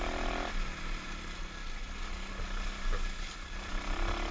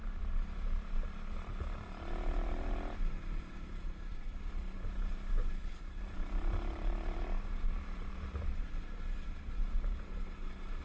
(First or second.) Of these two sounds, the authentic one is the first